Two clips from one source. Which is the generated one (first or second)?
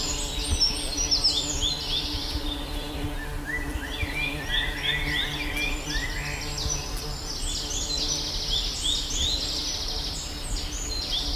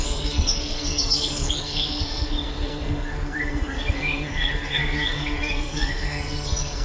second